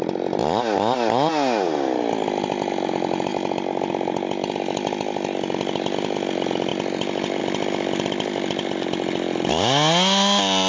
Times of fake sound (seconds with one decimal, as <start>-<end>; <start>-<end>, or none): none